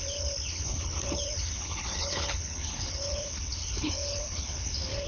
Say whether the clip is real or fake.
fake